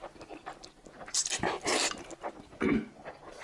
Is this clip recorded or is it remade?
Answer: recorded